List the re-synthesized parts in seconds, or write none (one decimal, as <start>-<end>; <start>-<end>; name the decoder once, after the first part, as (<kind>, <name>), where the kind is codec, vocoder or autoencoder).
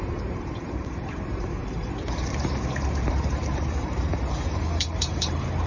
0.0-5.7 (vocoder, BigVGAN v2)